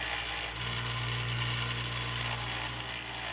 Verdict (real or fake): real